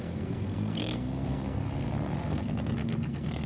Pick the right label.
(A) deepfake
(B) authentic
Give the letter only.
A